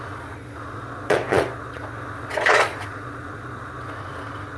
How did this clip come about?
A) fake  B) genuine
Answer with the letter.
A